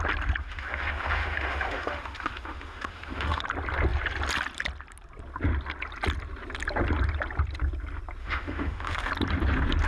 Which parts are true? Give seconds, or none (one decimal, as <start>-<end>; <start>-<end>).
0.0-0.4; 3.4-8.2; 9.1-9.9